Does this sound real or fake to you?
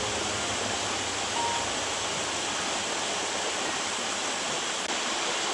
real